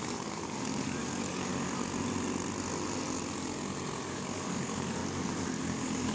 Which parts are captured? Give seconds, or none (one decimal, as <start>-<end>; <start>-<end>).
1.5-4.1; 5.0-5.6